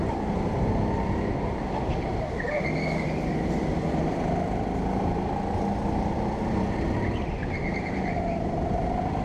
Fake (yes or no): no